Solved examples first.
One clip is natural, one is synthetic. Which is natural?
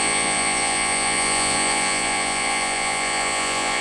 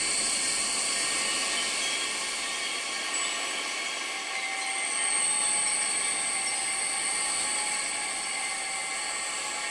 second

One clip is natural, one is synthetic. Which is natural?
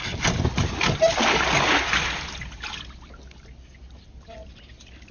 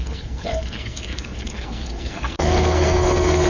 first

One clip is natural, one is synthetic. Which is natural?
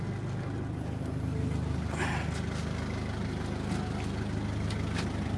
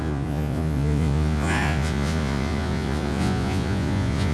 first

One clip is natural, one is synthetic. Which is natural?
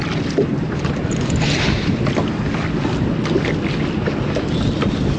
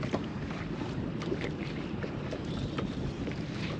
first